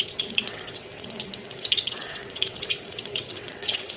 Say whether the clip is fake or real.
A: fake